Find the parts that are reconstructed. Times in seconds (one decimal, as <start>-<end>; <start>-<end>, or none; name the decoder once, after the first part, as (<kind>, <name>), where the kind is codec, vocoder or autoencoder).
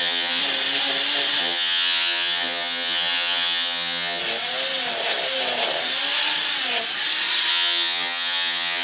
0.0-0.4 (vocoder, HiFi-GAN); 1.4-4.2; 7.5-8.8